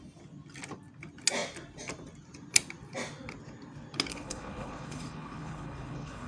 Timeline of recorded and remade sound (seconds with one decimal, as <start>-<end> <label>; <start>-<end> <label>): 0.0-4.1 recorded; 4.1-6.3 remade